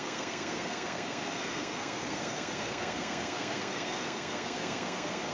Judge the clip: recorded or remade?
remade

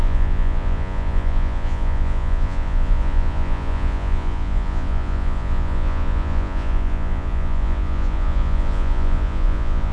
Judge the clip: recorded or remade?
remade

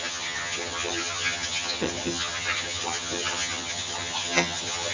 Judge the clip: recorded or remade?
remade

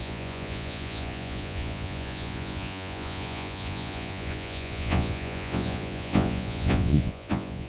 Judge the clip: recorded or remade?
remade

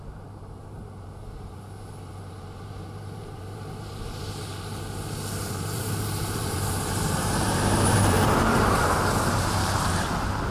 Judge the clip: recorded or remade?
remade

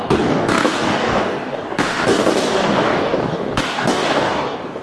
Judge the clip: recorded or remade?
remade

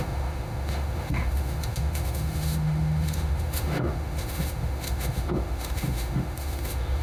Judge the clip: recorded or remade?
remade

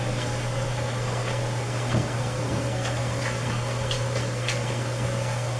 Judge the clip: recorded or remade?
remade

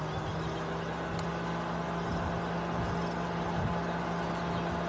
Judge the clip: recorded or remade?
recorded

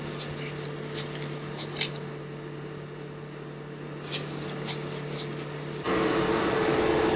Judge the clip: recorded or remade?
recorded